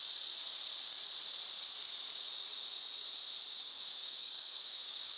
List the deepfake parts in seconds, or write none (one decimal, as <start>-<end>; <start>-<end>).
3.5-5.2